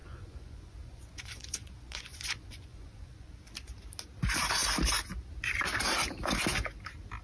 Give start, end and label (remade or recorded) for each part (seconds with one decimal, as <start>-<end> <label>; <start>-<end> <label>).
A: 0.0-3.3 remade; 3.3-7.2 recorded